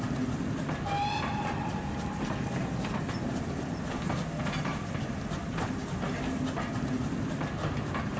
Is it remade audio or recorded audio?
recorded